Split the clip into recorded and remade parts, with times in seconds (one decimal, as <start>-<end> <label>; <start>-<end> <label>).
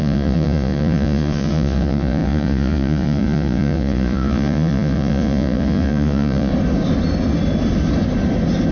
0.0-6.5 remade; 6.5-8.7 recorded